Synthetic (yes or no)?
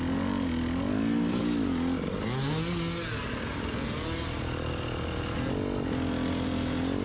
no